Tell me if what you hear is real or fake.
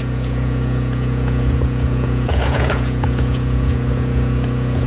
fake